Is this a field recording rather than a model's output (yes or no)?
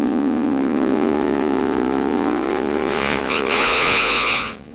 no